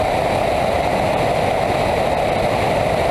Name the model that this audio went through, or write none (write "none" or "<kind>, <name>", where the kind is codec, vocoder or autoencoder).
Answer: none